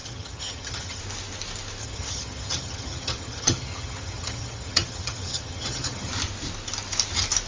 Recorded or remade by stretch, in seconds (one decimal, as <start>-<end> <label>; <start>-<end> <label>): 0.0-1.0 remade; 1.0-1.8 recorded; 1.8-6.1 remade; 6.1-7.5 recorded